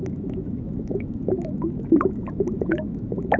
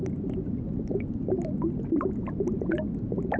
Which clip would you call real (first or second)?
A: second